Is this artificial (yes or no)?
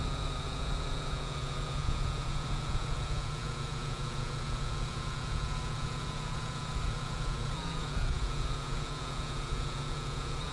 yes